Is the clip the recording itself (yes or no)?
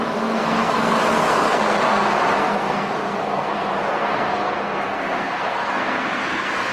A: no